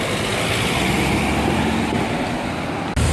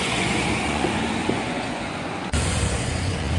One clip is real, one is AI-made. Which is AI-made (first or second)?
second